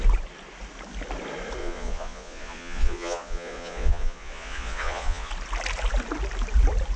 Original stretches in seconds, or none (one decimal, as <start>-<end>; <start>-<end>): 0.0-1.6; 5.3-7.0